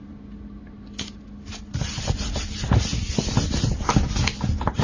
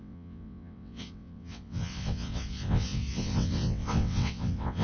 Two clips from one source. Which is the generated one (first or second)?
second